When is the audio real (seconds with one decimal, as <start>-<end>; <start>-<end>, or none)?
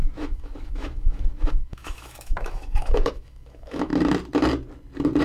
3.9-5.2